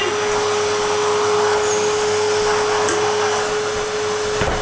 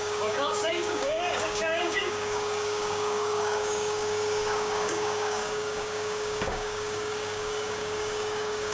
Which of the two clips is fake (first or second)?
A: second